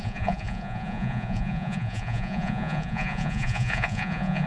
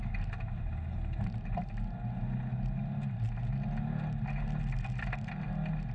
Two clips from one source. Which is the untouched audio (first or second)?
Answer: second